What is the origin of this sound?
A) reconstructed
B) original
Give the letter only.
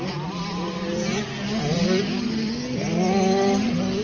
B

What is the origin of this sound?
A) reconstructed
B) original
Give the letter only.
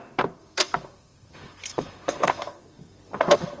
A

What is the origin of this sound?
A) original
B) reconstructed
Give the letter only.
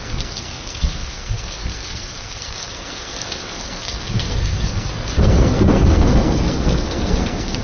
B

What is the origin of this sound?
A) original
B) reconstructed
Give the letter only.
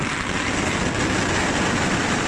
A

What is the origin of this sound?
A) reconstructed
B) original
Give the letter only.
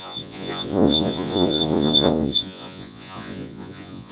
A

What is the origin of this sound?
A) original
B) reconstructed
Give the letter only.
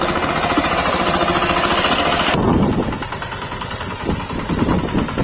A